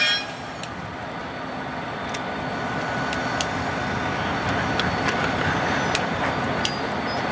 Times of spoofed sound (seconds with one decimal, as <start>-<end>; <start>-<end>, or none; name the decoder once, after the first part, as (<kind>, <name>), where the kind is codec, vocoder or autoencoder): none